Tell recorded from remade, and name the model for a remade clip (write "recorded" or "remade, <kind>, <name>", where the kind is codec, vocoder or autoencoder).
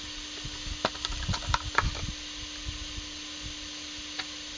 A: recorded